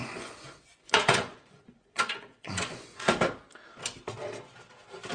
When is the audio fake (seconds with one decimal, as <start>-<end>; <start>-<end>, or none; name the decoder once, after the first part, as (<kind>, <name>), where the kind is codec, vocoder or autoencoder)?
0.0-3.1 (vocoder, Vocos)